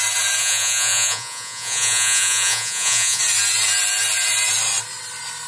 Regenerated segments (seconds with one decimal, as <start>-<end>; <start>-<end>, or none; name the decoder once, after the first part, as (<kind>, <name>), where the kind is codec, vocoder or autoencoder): 0.4-3.2 (vocoder, Vocos)